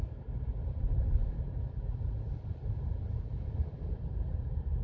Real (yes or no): yes